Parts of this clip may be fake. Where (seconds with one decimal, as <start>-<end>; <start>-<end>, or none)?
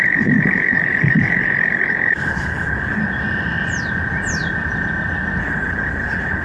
0.0-3.0; 5.4-6.4